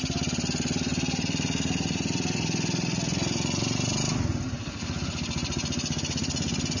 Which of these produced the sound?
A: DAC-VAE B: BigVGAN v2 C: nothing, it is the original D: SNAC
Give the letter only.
C